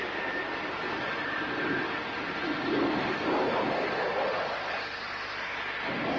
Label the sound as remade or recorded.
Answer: recorded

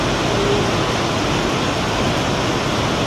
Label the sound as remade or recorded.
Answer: recorded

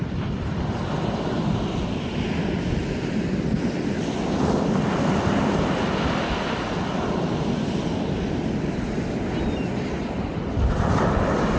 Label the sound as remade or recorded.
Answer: remade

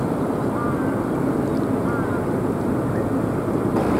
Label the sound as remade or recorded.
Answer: recorded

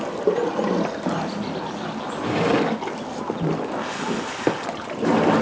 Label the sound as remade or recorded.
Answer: recorded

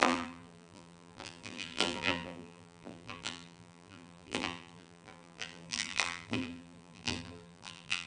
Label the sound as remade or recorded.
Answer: remade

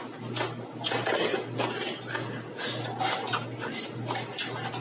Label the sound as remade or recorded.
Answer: recorded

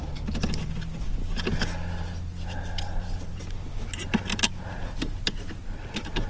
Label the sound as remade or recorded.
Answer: recorded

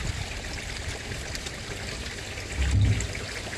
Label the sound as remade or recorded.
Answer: recorded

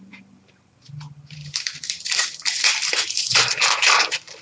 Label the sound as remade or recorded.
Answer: remade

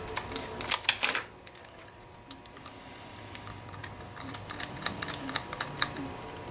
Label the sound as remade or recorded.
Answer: remade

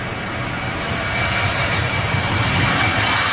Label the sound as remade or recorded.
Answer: remade